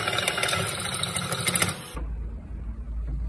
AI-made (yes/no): no